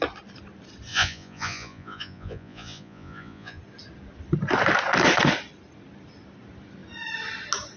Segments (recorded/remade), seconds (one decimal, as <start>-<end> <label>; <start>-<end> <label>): 0.0-0.9 recorded; 0.9-3.6 remade; 3.6-7.8 recorded